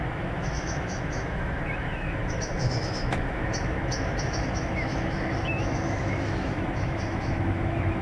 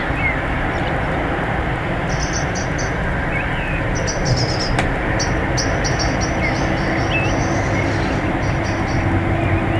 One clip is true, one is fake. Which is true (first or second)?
second